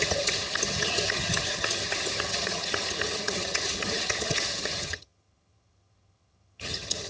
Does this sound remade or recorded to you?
remade